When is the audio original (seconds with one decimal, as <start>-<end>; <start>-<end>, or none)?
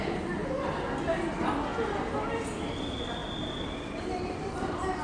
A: 0.0-5.0